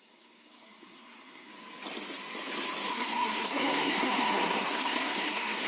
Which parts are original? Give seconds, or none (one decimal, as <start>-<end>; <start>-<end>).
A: 1.5-2.9